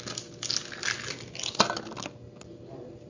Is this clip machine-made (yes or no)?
no